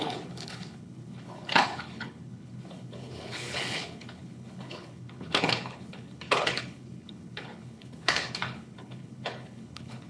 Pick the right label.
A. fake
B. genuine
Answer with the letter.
A